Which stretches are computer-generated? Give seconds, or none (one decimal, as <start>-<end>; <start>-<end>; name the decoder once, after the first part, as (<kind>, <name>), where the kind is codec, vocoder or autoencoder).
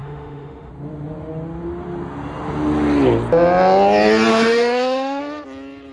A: 0.0-0.7 (autoencoder, DAC-VAE); 4.3-5.2